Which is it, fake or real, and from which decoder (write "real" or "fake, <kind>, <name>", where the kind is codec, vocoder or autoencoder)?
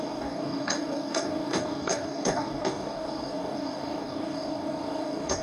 fake, codec, DAC